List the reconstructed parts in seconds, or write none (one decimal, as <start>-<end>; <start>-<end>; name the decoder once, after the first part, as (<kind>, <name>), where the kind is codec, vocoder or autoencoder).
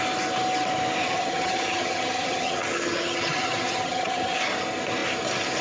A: 1.0-4.4 (vocoder, HiFi-GAN)